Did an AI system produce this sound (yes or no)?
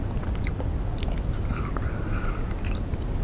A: no